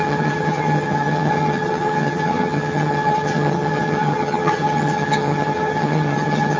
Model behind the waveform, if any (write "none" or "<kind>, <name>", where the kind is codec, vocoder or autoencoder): vocoder, HiFi-GAN